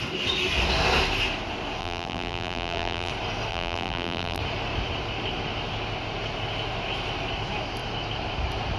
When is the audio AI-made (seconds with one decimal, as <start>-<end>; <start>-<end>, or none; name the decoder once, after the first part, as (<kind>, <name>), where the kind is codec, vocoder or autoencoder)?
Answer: 1.8-3.1 (vocoder, BigVGAN v2); 3.5-4.4